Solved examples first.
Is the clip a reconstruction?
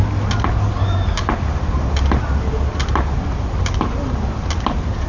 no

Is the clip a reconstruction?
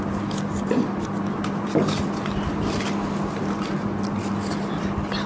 no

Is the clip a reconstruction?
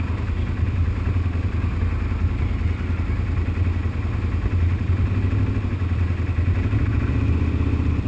no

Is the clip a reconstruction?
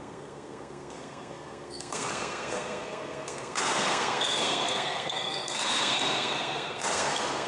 yes